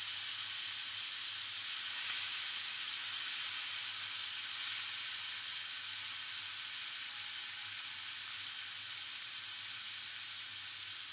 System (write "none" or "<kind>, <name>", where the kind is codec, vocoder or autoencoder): none